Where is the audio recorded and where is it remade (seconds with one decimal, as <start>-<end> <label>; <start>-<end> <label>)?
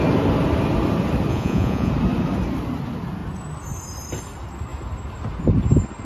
0.0-1.3 recorded; 1.3-1.9 remade; 1.9-6.0 recorded